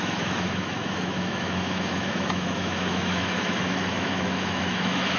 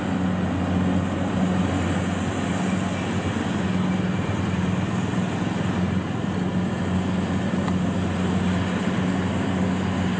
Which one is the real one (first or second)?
second